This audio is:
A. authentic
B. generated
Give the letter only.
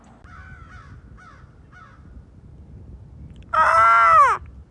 A